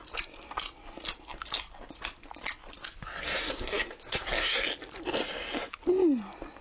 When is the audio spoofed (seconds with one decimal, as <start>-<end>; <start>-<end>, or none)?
3.5-4.6